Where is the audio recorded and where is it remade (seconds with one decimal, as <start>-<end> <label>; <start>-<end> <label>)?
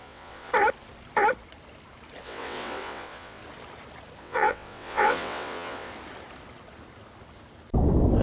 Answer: 0.0-0.5 remade; 0.5-2.2 recorded; 2.2-3.4 remade; 3.4-4.2 recorded; 4.2-5.9 remade; 5.9-8.2 recorded